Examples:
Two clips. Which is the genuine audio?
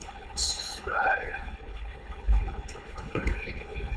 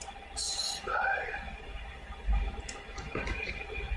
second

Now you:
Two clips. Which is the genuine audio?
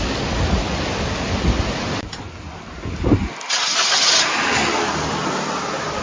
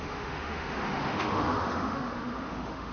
first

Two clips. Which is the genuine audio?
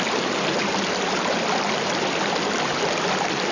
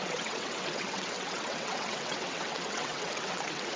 first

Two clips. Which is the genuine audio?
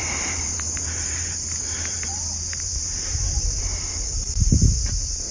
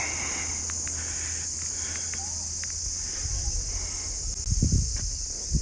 second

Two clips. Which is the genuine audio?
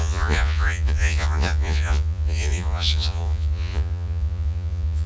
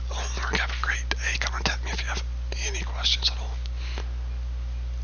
second